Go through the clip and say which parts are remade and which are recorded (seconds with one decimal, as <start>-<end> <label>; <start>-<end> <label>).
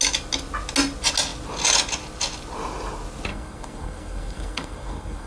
0.0-3.3 recorded; 3.3-5.3 remade